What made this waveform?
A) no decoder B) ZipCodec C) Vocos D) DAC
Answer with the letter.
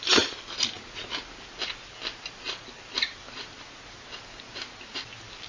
A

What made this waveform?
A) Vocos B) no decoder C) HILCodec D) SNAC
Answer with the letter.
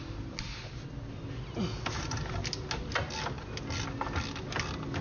B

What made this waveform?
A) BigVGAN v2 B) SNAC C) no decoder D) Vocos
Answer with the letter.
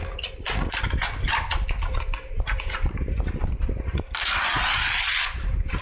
C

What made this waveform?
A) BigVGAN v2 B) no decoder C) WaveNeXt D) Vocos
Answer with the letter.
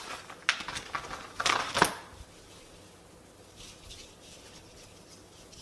B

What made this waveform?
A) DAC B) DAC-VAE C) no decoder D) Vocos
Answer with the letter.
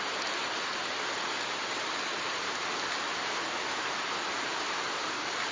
C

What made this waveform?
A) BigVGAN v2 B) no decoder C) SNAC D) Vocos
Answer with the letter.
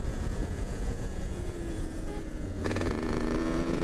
D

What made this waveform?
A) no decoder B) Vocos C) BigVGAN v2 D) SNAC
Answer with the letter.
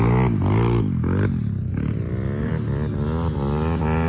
A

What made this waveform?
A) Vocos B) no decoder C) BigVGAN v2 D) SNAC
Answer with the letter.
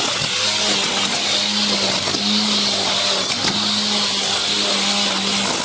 B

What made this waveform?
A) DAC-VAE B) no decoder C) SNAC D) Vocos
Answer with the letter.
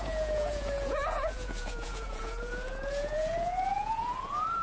D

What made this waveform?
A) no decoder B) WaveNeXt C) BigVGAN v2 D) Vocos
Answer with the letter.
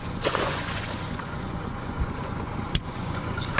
D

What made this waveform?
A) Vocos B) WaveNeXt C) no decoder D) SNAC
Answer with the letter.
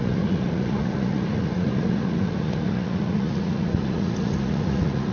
A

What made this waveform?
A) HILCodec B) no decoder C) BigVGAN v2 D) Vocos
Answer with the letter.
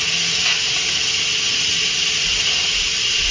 B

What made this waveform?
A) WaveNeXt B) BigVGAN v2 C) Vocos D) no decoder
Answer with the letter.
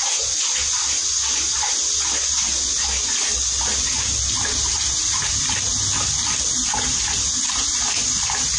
D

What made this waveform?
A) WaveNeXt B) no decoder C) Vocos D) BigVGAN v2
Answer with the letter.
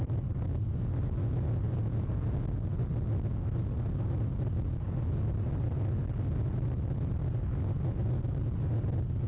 B